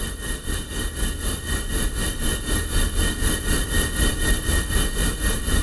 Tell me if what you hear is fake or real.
real